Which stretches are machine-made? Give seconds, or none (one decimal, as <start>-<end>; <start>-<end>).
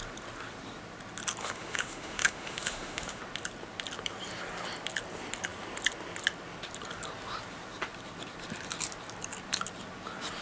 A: 1.4-3.2